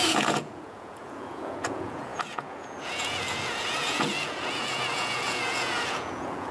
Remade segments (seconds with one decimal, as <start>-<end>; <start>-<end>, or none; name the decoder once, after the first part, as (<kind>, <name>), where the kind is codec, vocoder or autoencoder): 0.0-6.5 (vocoder, Vocos)